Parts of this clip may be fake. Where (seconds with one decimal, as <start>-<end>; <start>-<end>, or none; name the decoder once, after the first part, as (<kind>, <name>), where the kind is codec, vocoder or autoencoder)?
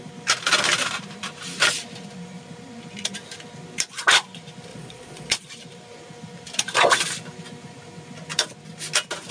4.7-5.5 (vocoder, Vocos)